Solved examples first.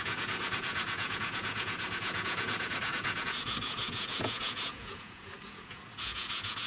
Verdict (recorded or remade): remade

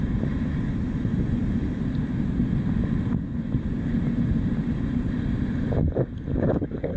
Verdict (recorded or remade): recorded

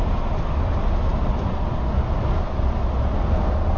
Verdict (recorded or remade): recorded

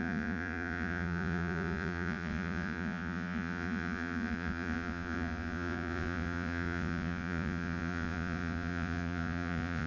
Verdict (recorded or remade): remade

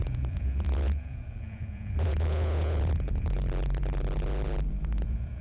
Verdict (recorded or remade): remade